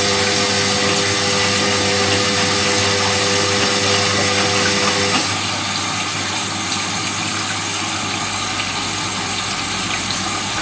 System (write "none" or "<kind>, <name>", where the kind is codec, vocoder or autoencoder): none